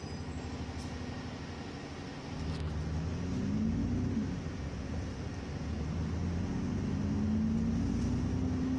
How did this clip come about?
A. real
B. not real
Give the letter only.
A